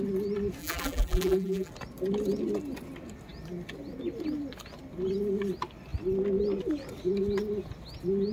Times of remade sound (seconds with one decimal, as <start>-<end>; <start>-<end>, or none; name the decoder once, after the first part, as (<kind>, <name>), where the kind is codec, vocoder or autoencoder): 0.6-1.7 (vocoder, BigVGAN v2)